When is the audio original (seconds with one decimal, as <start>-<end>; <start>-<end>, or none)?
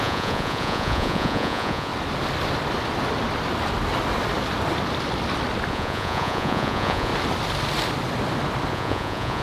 1.9-5.7; 7.1-8.7